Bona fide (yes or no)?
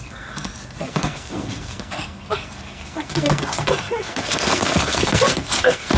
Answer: no